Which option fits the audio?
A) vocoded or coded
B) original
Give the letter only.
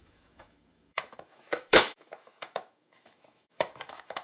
A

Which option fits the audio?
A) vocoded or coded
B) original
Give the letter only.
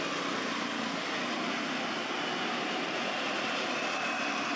B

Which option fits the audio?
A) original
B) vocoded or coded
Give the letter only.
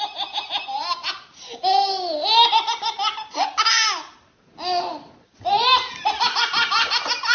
A